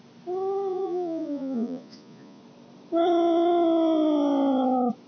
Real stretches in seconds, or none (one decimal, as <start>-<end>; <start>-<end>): 0.0-0.7; 2.4-5.1